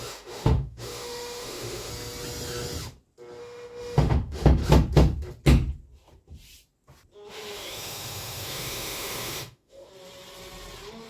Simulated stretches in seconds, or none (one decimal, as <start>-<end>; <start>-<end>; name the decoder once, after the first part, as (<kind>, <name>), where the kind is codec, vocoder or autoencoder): 0.0-1.9 (autoencoder, DAC-VAE); 3.4-4.6; 7.3-9.9